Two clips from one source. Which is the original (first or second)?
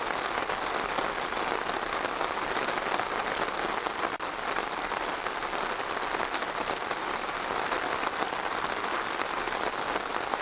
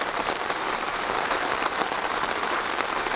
first